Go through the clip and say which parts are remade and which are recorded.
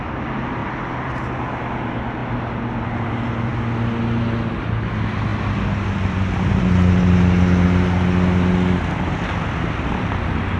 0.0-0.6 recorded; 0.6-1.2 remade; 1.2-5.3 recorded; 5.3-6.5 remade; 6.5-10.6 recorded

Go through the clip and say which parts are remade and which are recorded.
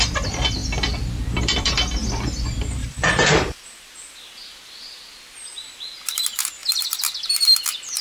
0.0-2.8 recorded; 2.8-3.6 remade; 3.6-8.0 recorded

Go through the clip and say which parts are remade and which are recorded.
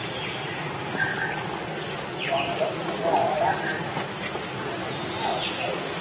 0.0-1.1 remade; 1.1-1.9 recorded; 1.9-3.2 remade; 3.2-4.3 recorded; 4.3-5.3 remade; 5.3-6.0 recorded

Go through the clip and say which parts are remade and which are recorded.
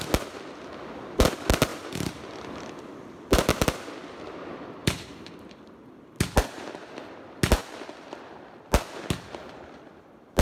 0.0-1.7 recorded; 1.7-3.0 remade; 3.0-4.8 recorded; 4.8-6.0 remade; 6.0-7.6 recorded; 7.6-8.7 remade; 8.7-10.4 recorded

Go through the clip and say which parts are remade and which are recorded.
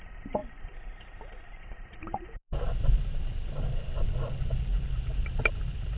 0.0-0.4 recorded; 0.4-4.0 remade; 4.0-4.7 recorded; 4.7-6.0 remade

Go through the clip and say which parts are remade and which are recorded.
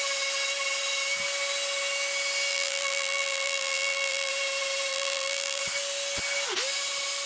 0.0-2.5 recorded; 2.5-4.3 remade; 4.3-4.9 recorded; 4.9-5.6 remade; 5.6-7.3 recorded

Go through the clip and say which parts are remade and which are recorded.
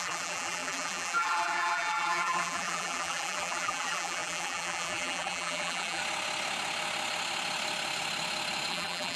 0.0-6.0 remade; 6.0-8.7 recorded; 8.7-9.2 remade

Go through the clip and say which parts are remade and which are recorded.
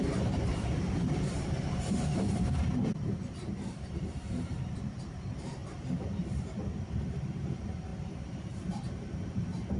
0.0-9.8 remade